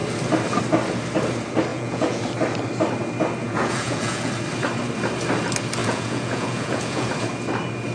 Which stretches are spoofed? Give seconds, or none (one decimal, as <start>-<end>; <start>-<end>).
1.7-2.2; 3.4-4.3; 5.8-7.1